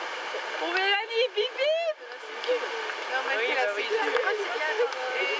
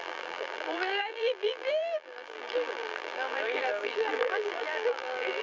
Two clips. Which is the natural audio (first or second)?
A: first